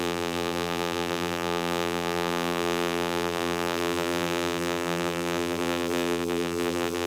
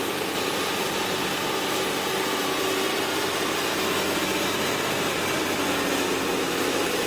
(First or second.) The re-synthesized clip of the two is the first